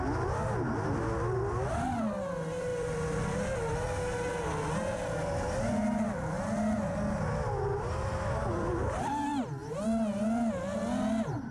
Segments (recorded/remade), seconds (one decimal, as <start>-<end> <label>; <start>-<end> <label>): 0.0-11.5 recorded